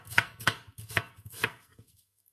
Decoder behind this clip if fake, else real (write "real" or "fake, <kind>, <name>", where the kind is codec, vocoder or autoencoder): fake, codec, SNAC